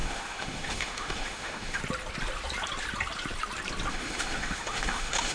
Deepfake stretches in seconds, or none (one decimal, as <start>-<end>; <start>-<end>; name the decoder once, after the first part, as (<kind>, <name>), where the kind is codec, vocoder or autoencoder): 0.0-1.8 (autoencoder, DAC-VAE); 3.9-5.3

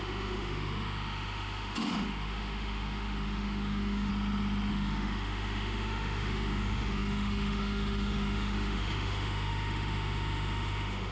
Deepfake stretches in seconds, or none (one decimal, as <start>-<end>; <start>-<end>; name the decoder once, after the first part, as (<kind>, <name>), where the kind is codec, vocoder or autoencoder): 0.0-4.1 (autoencoder, DAC-VAE); 4.7-11.1

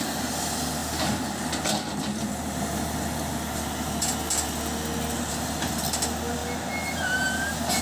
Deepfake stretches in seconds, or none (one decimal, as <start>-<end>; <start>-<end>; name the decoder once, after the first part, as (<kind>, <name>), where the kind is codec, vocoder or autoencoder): none

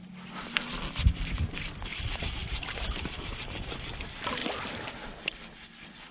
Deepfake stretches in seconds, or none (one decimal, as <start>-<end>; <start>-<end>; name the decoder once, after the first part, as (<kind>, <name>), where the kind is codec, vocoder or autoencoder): 0.8-4.4 (vocoder, BigVGAN v2)

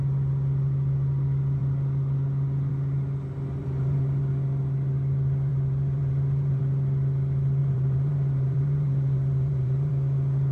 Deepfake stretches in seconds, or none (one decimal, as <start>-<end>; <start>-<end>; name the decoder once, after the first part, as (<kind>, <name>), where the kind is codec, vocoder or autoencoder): 3.6-4.2 (vocoder, BigVGAN v2); 5.5-6.6; 7.6-9.9